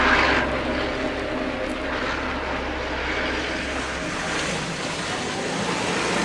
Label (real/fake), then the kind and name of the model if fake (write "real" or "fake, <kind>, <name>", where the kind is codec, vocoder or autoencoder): real